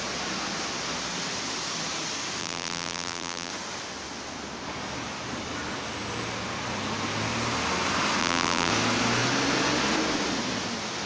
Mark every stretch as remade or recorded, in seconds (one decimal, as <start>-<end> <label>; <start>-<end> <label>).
0.0-2.4 recorded; 2.4-3.5 remade; 3.5-8.2 recorded; 8.2-8.7 remade; 8.7-11.1 recorded